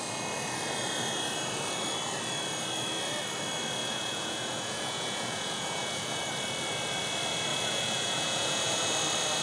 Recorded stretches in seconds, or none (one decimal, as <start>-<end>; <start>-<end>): 0.0-3.8; 6.2-7.5; 8.9-9.4